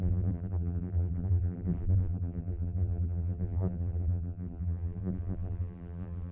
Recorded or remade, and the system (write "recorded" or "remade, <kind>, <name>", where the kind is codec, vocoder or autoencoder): remade, vocoder, BigVGAN v2